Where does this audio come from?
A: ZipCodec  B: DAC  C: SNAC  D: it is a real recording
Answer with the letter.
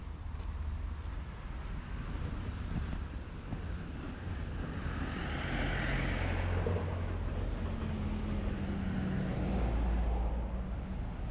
D